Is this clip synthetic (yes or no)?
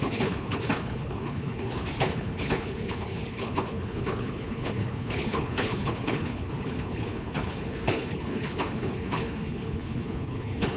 yes